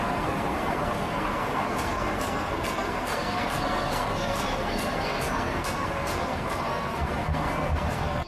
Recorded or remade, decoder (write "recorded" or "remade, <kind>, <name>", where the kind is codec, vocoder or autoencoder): remade, codec, SNAC